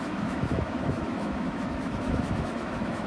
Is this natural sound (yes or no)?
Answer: no